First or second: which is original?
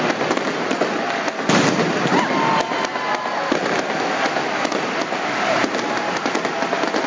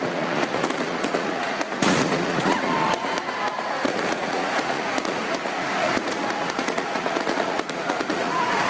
first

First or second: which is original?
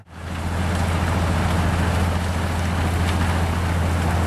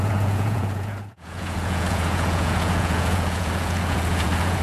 first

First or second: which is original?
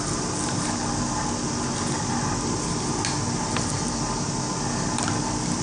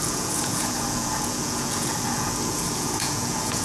first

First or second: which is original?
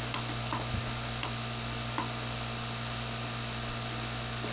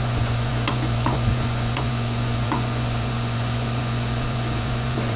first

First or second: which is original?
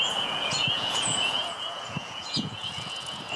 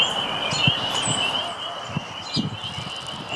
second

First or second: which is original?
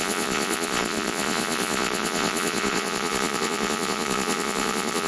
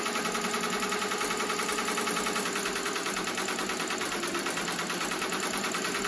second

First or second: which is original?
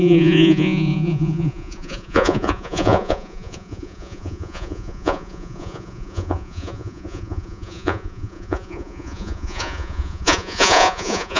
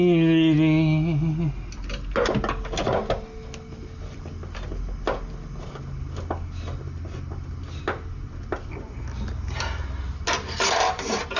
second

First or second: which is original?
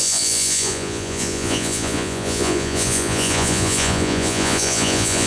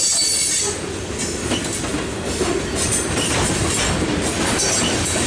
second